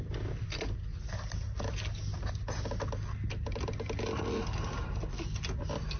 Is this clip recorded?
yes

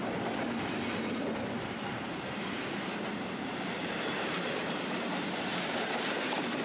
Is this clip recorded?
no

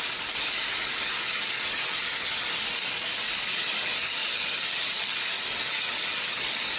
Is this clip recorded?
no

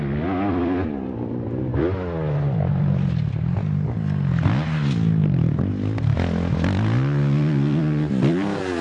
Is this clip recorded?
yes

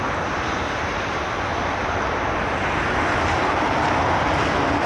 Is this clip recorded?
yes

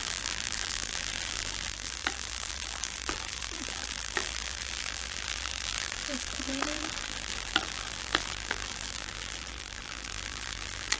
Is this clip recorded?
no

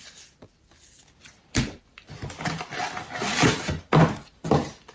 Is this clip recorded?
yes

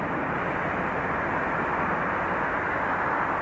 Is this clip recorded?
yes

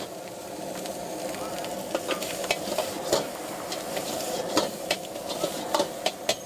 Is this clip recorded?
yes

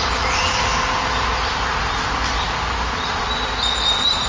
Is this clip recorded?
yes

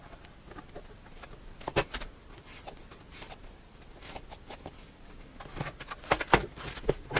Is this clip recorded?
yes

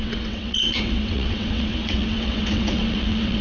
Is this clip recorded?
no